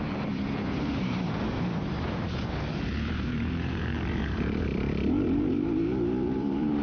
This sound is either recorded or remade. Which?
remade